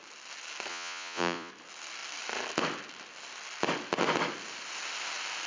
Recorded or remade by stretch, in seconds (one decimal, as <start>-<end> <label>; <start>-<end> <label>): 0.0-0.7 recorded; 0.7-1.5 remade; 1.5-5.5 recorded